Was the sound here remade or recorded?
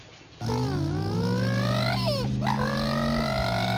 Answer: recorded